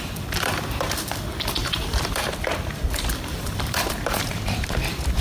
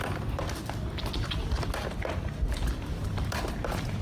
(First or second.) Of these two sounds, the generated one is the first